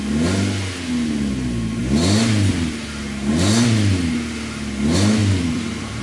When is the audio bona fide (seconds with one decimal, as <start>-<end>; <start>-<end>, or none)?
0.0-5.2